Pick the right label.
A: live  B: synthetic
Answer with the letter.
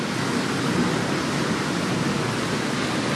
A